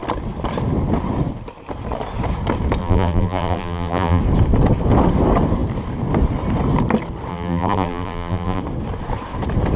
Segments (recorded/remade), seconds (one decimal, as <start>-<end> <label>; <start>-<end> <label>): 0.0-2.8 recorded; 2.8-4.2 remade; 4.2-7.3 recorded; 7.3-8.6 remade; 8.6-9.8 recorded